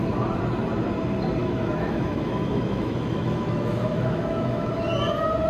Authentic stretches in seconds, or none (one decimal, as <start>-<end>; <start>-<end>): 0.0-1.4; 4.7-5.5

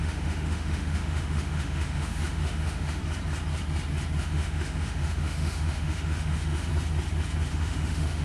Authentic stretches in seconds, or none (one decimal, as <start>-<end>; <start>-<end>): 3.0-4.2; 6.7-7.5

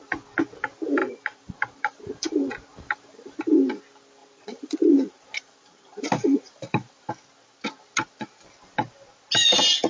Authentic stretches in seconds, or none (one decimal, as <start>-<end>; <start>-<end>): 0.0-1.0; 2.3-2.7; 3.4-4.2; 7.1-9.9

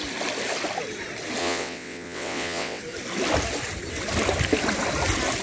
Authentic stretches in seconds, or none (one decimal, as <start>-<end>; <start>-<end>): 0.0-1.4; 2.8-5.4